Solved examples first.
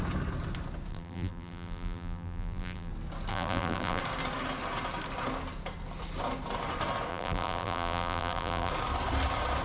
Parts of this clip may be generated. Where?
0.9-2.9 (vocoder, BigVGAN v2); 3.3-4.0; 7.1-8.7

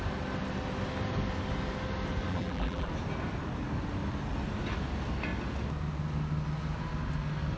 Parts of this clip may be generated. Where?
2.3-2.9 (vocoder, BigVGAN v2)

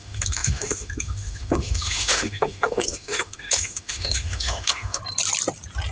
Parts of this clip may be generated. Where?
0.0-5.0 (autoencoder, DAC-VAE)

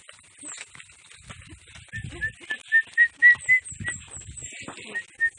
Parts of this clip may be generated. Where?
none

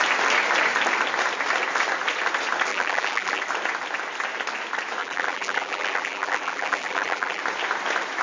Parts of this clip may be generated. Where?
2.7-3.4 (vocoder, BigVGAN v2); 5.0-7.4

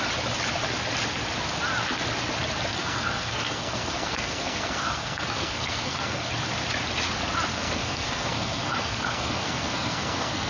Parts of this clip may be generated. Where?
2.7-6.3 (codec, SNAC); 7.5-10.5

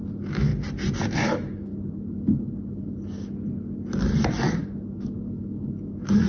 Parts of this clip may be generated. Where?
0.0-0.5 (autoencoder, DAC-VAE); 1.1-1.7; 4.6-6.3